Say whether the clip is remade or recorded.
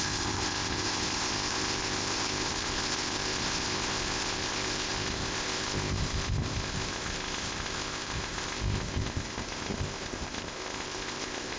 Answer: remade